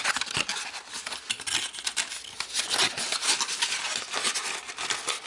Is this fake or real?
real